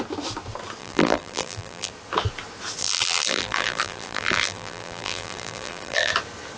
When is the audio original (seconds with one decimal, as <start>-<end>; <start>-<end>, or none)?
0.0-0.8; 1.9-2.8; 6.1-6.6